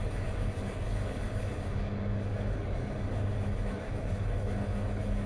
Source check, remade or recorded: remade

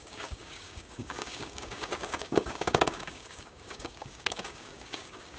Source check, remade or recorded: remade